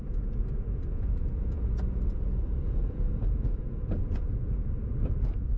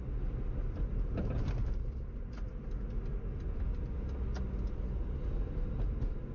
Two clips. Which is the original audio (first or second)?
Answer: second